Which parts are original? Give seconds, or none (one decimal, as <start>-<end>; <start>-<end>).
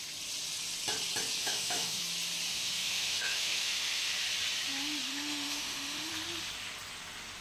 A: 0.0-1.4; 2.0-2.5; 4.1-5.1; 6.1-7.4